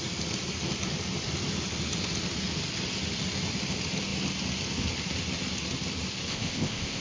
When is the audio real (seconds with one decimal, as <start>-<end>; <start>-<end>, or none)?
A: 0.0-6.3